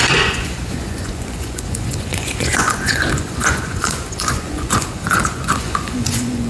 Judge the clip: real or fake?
fake